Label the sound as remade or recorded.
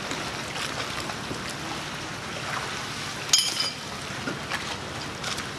recorded